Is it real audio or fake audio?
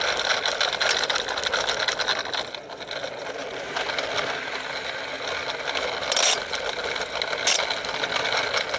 real